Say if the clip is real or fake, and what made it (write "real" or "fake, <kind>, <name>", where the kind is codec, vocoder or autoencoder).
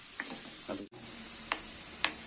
fake, vocoder, BigVGAN v2